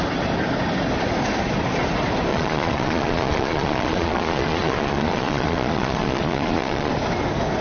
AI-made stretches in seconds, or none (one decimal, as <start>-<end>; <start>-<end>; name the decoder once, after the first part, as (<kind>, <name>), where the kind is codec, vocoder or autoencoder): 2.3-6.9 (vocoder, Vocos)